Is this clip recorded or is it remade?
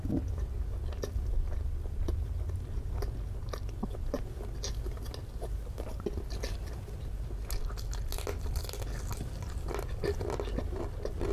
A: recorded